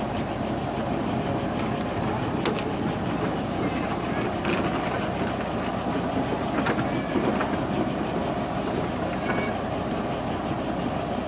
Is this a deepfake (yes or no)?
no